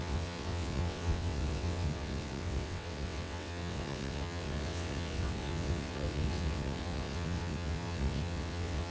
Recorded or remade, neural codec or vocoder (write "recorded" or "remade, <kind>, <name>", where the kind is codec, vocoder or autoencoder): remade, vocoder, WaveNeXt